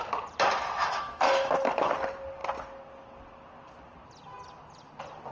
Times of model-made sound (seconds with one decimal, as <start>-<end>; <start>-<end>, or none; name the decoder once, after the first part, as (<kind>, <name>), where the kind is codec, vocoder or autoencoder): 0.8-1.9 (autoencoder, DAC-VAE)